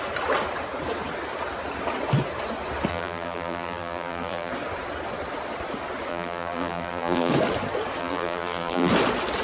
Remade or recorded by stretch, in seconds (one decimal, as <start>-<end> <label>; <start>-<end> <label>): 0.0-2.9 recorded; 2.9-4.5 remade; 4.5-6.1 recorded; 6.1-7.3 remade; 7.3-8.0 recorded; 8.0-8.9 remade; 8.9-9.4 recorded

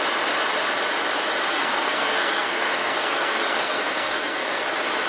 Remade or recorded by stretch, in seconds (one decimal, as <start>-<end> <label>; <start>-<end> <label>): 0.0-1.5 recorded; 1.5-4.6 remade; 4.6-5.1 recorded